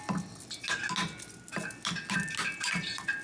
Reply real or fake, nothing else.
real